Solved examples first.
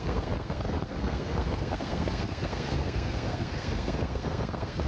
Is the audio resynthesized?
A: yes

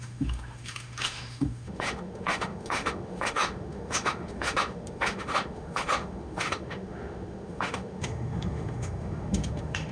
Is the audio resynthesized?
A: yes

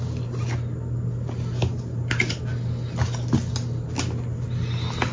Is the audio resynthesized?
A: no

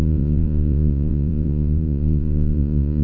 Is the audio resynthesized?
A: yes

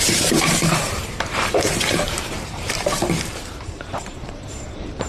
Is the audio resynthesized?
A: yes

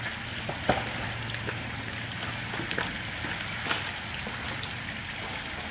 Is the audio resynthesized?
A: no